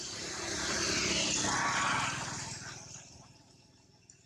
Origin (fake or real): real